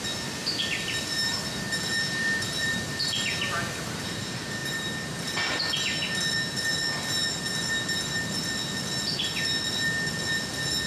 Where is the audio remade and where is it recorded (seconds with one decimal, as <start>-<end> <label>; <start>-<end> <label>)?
0.0-0.4 recorded; 0.4-4.1 remade; 4.1-10.9 recorded